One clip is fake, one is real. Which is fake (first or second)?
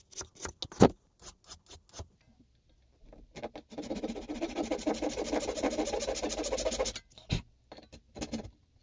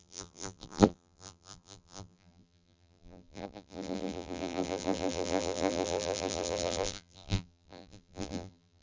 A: second